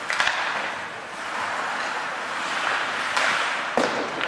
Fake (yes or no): no